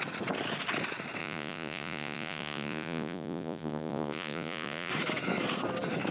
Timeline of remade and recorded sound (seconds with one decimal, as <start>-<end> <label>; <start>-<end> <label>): 0.0-1.2 recorded; 1.2-4.9 remade; 4.9-6.1 recorded

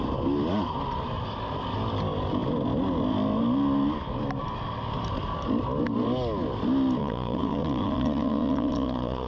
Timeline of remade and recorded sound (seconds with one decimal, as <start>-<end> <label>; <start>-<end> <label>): 0.0-7.0 recorded; 7.0-9.3 remade

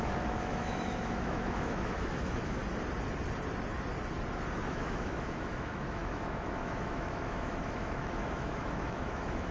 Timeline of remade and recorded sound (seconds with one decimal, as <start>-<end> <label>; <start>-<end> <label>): 0.0-2.6 remade; 2.6-4.7 recorded; 4.7-9.5 remade

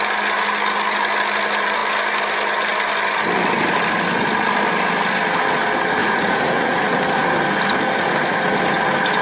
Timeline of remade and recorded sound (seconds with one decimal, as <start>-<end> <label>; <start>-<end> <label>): 0.0-6.0 recorded; 6.0-6.8 remade; 6.8-9.2 recorded